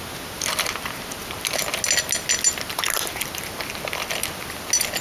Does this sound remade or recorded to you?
recorded